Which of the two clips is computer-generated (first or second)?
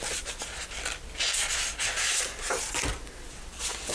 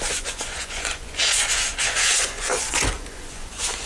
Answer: second